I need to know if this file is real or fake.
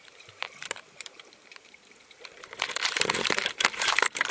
fake